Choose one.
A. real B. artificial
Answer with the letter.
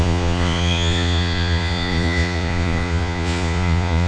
B